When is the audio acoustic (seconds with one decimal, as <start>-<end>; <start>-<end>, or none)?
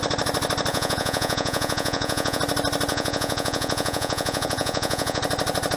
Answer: 0.0-0.7; 2.4-2.9; 5.2-5.8